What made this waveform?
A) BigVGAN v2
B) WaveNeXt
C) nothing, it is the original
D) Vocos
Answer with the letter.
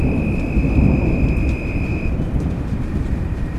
A